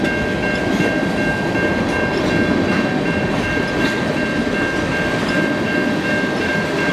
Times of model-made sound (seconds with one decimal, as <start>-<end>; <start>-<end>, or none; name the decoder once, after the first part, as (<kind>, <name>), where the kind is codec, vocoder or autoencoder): none